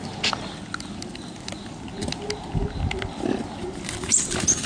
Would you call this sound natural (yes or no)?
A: yes